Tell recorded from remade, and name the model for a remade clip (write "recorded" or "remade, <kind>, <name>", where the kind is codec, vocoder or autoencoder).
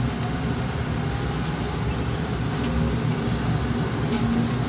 recorded